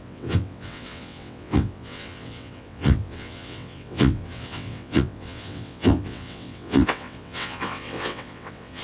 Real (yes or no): no